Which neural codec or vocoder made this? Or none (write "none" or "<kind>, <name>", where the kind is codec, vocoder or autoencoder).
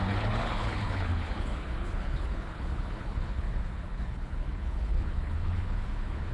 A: codec, HILCodec